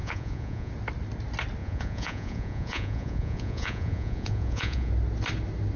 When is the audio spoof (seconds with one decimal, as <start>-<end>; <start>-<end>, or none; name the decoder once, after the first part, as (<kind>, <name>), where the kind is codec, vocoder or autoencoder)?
0.0-0.7 (vocoder, Vocos); 1.6-4.9

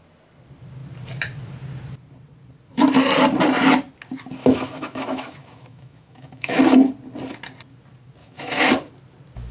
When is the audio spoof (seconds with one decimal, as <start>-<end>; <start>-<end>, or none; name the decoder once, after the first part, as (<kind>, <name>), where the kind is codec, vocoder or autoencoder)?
4.4-6.6 (autoencoder, DAC-VAE); 8.2-8.7

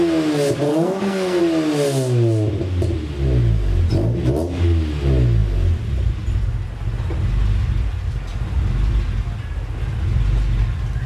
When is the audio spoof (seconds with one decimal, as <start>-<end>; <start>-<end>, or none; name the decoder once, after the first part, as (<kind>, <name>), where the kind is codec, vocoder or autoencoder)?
0.7-1.4 (codec, SNAC)